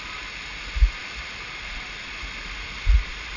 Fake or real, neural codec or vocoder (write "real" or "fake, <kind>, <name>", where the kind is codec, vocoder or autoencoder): real